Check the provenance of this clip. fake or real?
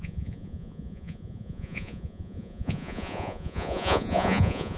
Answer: fake